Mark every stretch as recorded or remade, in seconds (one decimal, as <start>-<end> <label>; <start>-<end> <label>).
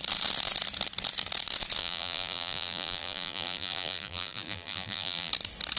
0.0-1.8 recorded; 1.8-5.3 remade; 5.3-5.8 recorded